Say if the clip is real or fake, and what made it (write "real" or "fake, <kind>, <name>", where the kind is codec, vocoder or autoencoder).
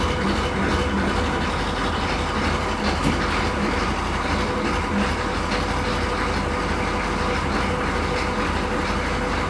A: real